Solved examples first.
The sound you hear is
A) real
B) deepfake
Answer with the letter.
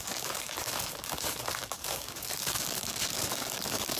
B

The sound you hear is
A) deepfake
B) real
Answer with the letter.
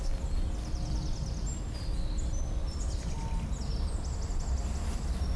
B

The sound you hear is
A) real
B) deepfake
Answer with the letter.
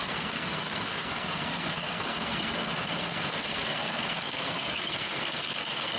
B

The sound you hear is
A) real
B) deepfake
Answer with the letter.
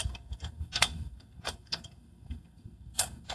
B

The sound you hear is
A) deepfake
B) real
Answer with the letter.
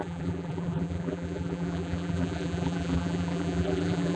A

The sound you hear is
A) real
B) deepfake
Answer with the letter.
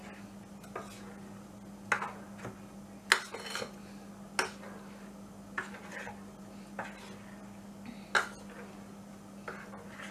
A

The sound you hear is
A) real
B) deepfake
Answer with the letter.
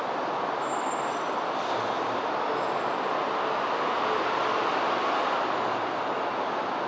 A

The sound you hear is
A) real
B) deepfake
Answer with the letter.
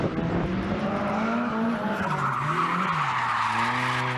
A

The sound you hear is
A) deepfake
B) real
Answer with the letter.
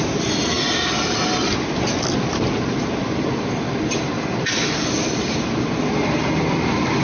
B